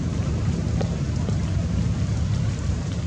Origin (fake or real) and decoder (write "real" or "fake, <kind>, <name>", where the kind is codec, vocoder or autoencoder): real